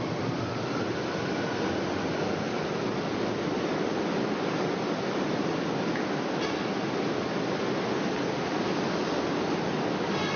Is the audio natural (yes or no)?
yes